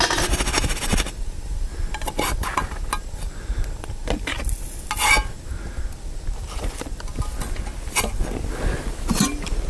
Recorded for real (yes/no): yes